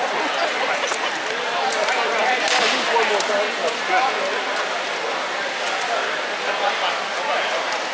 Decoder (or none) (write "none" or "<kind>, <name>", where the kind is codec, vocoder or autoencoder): none